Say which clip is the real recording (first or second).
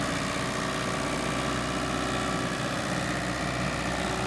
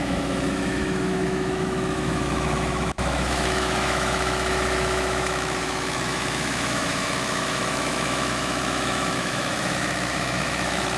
first